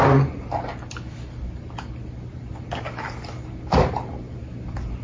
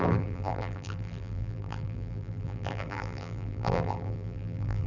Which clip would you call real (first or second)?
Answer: first